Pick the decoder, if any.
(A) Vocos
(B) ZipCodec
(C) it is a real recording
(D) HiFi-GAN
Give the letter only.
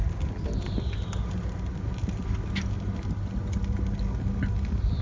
C